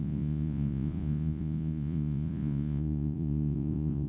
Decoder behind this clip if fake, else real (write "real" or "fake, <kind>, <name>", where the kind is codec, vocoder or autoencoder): fake, vocoder, Vocos